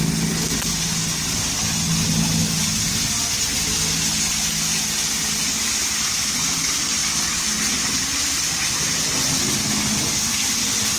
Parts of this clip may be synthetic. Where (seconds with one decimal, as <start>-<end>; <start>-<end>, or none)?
5.4-6.6